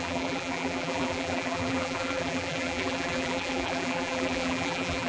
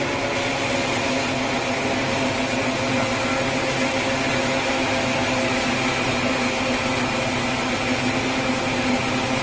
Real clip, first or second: second